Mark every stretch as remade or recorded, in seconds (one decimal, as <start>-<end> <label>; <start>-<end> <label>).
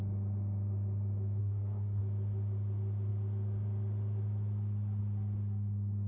0.0-1.4 recorded; 1.4-2.0 remade; 2.0-6.1 recorded